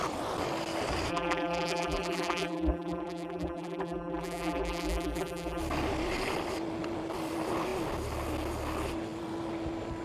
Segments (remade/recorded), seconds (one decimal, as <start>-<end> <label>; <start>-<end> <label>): 0.0-1.1 recorded; 1.1-5.6 remade; 5.6-10.0 recorded